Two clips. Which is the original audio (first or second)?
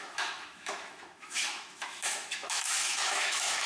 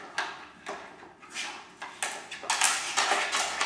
second